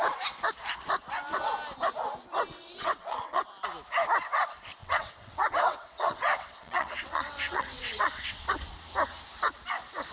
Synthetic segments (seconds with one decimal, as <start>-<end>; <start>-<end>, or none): 2.5-3.4; 4.8-8.6